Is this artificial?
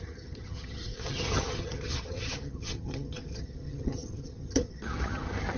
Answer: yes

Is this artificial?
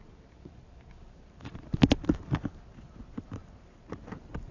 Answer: no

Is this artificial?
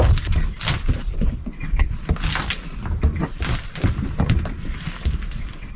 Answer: no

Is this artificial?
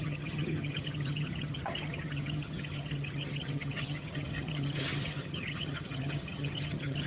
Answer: yes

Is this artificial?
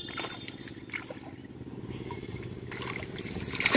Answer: no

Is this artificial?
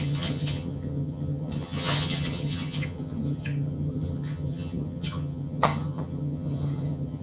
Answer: yes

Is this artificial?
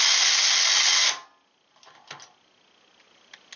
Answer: no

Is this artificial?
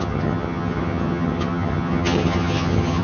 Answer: yes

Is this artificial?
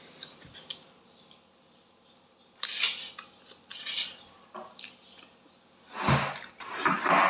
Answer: no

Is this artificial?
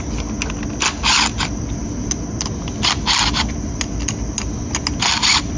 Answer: no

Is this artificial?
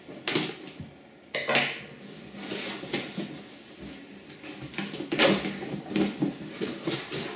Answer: no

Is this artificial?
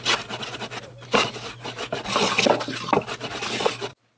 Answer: no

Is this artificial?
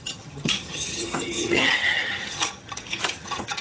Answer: yes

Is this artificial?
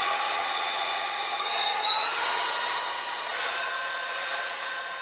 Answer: yes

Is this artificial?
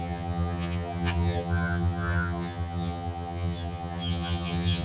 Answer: yes